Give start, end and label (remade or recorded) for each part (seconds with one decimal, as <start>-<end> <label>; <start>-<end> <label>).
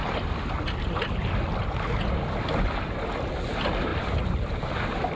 0.0-5.2 recorded